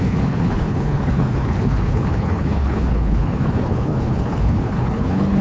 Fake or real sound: fake